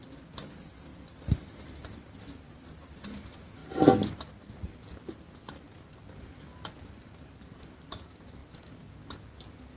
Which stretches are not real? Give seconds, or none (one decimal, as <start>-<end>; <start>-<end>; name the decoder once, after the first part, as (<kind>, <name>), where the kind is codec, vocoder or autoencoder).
0.0-3.6 (vocoder, BigVGAN v2); 4.4-4.9; 5.5-8.4; 9.2-9.8